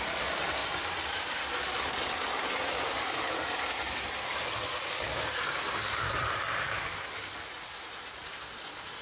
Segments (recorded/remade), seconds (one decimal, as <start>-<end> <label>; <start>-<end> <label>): 0.0-9.0 recorded